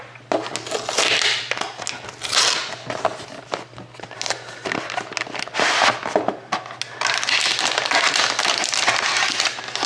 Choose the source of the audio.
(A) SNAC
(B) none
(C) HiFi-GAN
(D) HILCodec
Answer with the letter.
B